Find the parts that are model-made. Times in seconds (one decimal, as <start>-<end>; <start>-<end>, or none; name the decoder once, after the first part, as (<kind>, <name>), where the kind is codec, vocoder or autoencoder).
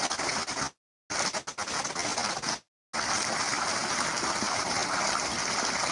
none